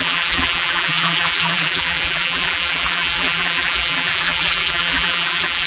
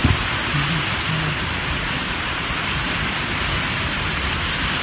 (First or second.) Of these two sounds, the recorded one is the second